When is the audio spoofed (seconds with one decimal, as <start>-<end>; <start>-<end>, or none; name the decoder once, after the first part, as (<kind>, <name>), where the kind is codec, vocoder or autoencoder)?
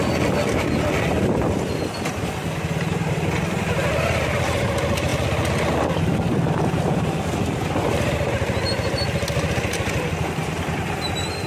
none